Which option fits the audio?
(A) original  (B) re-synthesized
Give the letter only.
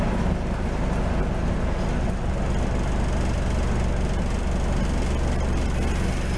A